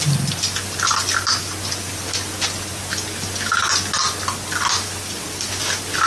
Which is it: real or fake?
real